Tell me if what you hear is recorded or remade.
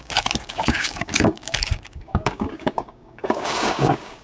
remade